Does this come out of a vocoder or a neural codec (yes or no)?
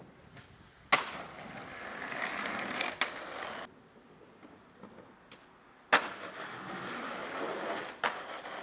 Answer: no